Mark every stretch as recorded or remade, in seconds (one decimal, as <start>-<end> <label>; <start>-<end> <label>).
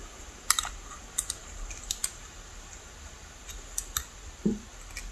0.0-2.0 remade; 2.0-5.1 recorded